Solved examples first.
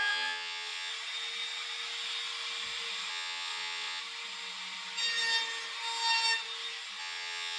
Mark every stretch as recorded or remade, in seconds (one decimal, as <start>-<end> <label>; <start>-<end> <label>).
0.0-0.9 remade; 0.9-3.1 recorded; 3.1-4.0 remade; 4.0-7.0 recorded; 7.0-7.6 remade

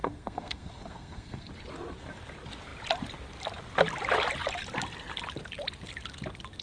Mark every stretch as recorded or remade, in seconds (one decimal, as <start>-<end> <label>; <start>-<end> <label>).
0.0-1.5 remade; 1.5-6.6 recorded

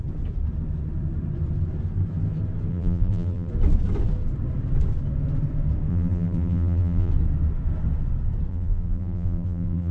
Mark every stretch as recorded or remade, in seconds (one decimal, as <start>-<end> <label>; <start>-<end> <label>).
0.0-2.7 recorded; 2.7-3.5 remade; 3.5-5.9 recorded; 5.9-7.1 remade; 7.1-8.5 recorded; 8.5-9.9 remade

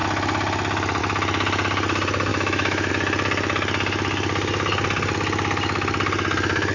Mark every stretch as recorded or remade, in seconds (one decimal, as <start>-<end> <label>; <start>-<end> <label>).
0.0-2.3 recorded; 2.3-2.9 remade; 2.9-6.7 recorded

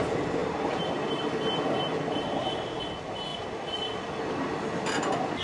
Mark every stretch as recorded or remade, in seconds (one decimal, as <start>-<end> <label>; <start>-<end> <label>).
0.0-5.4 recorded

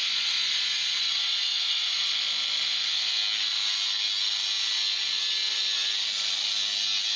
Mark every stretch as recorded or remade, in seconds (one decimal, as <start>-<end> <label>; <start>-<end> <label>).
0.0-2.1 remade; 2.1-7.2 recorded

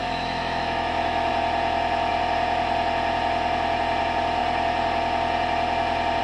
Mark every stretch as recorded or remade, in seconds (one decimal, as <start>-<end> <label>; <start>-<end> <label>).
0.0-1.3 remade; 1.3-6.2 recorded

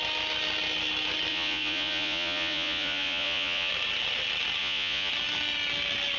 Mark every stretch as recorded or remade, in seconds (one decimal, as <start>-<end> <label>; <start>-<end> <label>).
0.0-1.3 recorded; 1.3-3.7 remade; 3.7-4.6 recorded; 4.6-5.1 remade; 5.1-6.2 recorded